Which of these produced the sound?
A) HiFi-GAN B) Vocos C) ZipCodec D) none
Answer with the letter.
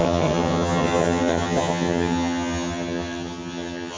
A